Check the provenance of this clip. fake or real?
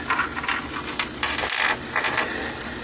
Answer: real